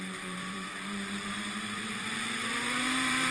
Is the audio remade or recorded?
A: remade